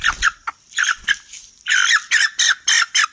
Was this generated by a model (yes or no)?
yes